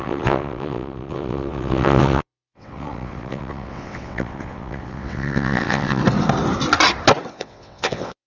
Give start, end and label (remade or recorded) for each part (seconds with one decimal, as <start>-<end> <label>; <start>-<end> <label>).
0.0-6.0 remade; 6.0-7.3 recorded; 7.3-8.3 remade